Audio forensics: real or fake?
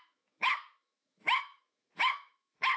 fake